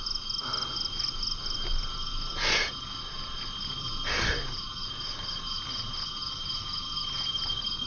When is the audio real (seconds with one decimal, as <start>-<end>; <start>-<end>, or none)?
0.0-7.9